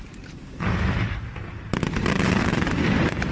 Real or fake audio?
fake